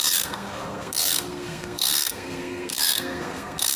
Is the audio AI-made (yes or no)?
yes